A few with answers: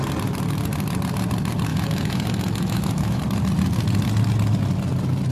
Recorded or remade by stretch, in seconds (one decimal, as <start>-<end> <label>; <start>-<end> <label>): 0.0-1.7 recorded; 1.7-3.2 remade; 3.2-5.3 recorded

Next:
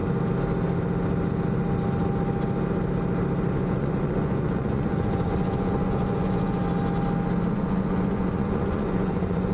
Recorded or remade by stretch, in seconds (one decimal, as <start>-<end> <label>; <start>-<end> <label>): 0.0-3.5 recorded; 3.5-6.6 remade; 6.6-7.5 recorded; 7.5-9.5 remade

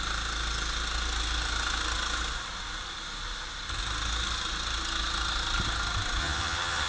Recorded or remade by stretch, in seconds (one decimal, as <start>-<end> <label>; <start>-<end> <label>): 0.0-6.2 recorded; 6.2-6.9 remade

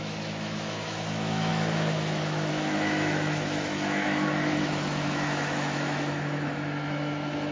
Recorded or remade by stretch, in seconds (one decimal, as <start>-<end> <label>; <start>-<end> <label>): 0.0-7.5 remade

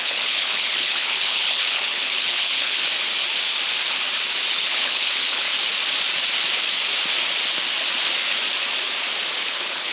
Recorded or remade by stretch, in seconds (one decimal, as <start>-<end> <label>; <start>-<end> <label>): 0.0-2.9 remade; 2.9-4.5 recorded; 4.5-5.5 remade; 5.5-9.4 recorded; 9.4-9.9 remade

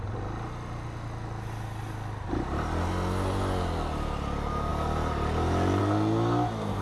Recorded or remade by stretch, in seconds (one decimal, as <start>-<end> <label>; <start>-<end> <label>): 0.0-6.8 recorded